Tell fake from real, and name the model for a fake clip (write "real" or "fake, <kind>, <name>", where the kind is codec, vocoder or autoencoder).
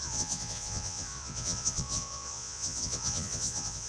fake, vocoder, Vocos